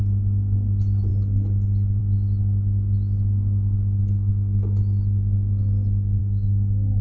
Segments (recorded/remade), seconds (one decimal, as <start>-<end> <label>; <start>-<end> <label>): 0.0-4.0 recorded; 4.0-4.8 remade; 4.8-6.2 recorded; 6.2-7.0 remade